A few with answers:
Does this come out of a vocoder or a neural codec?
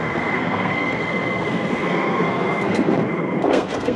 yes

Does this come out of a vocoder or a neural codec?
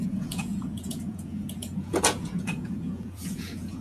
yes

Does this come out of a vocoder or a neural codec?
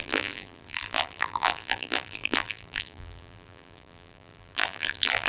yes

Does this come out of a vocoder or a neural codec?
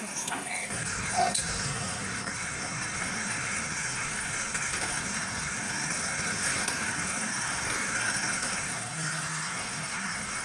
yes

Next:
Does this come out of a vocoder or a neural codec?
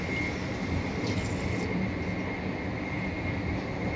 no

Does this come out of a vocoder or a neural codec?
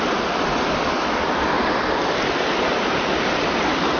no